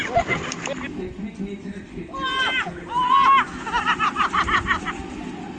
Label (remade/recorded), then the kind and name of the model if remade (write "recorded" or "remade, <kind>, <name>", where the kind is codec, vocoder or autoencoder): recorded